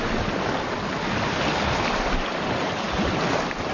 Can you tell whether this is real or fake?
real